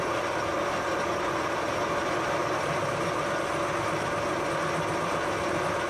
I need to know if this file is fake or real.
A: real